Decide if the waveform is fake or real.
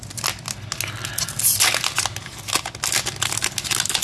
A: real